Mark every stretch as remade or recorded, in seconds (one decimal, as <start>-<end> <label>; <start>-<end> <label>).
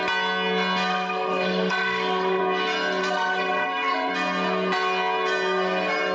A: 0.0-0.9 recorded; 0.9-2.4 remade; 2.4-3.0 recorded; 3.0-4.1 remade; 4.1-6.1 recorded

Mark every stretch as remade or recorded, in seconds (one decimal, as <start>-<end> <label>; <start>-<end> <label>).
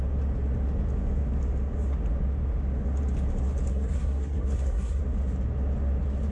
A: 0.0-3.7 recorded; 3.7-5.0 remade; 5.0-6.3 recorded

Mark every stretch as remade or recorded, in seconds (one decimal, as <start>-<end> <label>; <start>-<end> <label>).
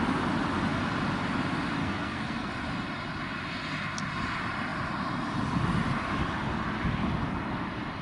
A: 0.0-1.8 recorded; 1.8-2.5 remade; 2.5-8.0 recorded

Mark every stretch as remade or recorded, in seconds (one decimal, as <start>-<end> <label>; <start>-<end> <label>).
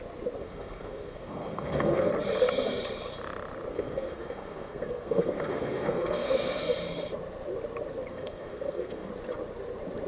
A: 0.0-0.4 recorded; 0.4-2.1 remade; 2.1-3.7 recorded; 3.7-6.6 remade; 6.6-8.1 recorded; 8.1-9.1 remade; 9.1-10.1 recorded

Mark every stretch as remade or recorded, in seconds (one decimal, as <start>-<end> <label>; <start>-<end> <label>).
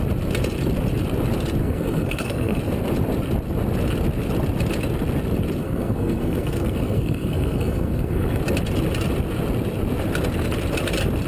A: 0.0-1.6 recorded; 1.6-2.6 remade; 2.6-5.6 recorded; 5.6-8.4 remade; 8.4-11.3 recorded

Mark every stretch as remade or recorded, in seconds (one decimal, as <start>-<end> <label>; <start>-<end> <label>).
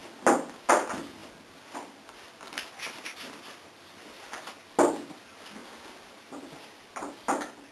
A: 0.0-7.7 recorded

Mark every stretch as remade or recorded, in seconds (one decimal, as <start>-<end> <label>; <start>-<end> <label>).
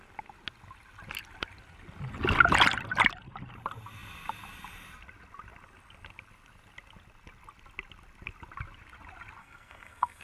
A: 0.0-9.4 recorded; 9.4-10.2 remade